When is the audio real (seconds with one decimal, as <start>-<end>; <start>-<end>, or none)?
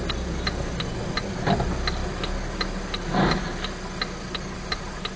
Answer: 0.0-5.2